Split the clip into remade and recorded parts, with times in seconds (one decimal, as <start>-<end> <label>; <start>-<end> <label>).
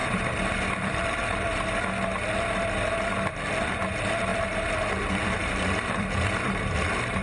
0.0-1.6 remade; 1.6-4.3 recorded; 4.3-4.9 remade; 4.9-5.4 recorded; 5.4-7.2 remade